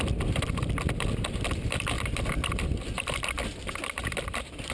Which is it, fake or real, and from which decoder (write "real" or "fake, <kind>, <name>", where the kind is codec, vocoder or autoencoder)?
real